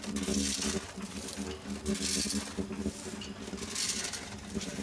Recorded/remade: recorded